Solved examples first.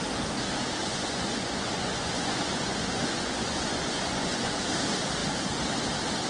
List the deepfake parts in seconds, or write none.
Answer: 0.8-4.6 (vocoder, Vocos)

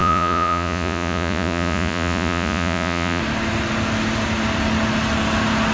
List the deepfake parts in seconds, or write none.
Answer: 0.0-3.2 (vocoder, Vocos)

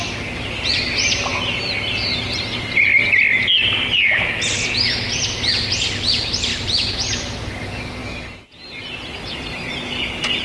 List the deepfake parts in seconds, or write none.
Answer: none

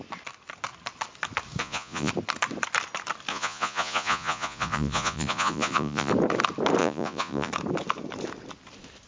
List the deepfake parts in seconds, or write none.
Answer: 1.6-2.1 (vocoder, Vocos); 3.3-6.1; 6.8-7.5

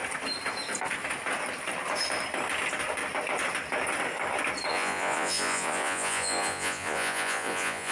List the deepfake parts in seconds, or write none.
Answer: 4.7-7.9 (vocoder, Vocos)